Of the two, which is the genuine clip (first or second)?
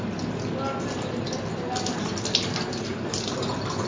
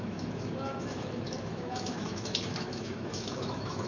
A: first